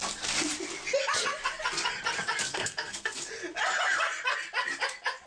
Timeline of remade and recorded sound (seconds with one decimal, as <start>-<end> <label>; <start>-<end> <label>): 0.0-2.5 recorded; 2.5-3.3 remade; 3.3-5.3 recorded